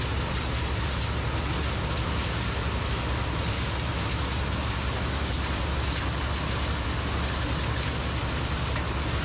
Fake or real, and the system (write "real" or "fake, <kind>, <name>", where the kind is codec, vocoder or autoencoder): real